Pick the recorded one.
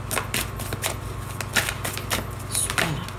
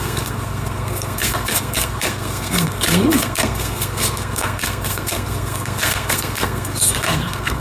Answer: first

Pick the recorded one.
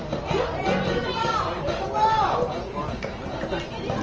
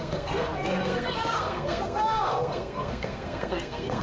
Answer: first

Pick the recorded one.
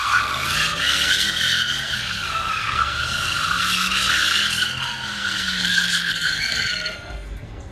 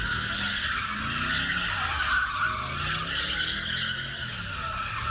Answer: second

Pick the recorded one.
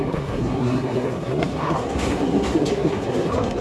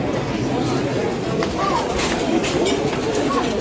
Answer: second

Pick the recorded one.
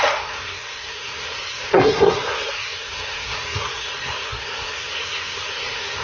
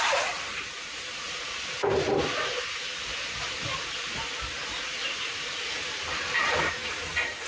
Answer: second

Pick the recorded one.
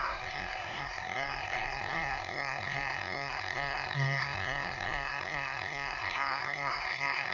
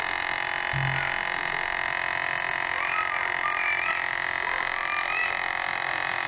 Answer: second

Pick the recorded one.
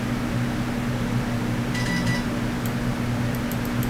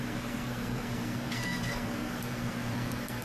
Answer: first